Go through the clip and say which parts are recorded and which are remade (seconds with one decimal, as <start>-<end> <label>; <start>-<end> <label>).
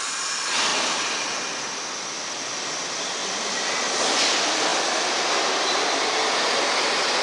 0.0-7.2 recorded